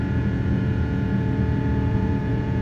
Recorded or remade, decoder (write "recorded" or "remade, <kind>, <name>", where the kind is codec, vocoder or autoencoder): remade, vocoder, Vocos